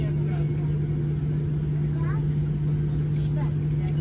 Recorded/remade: recorded